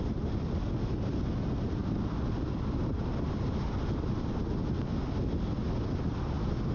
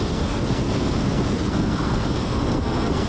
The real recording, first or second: first